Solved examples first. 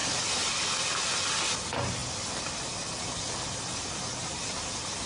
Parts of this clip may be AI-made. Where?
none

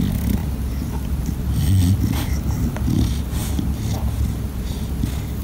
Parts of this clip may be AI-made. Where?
none

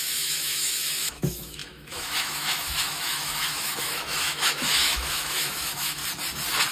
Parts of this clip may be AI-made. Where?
0.0-6.0 (autoencoder, DAC-VAE)

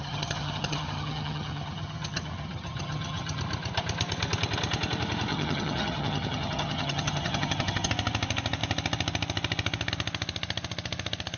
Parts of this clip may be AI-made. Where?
0.0-3.4 (vocoder, HiFi-GAN); 5.3-7.9